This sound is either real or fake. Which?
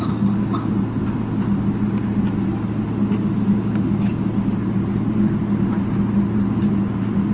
real